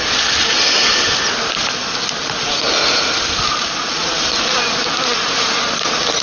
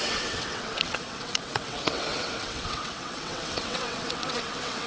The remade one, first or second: second